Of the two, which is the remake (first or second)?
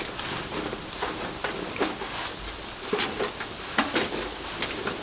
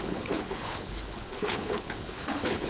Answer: second